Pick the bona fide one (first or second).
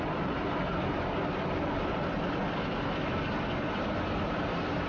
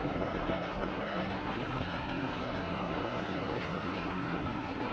first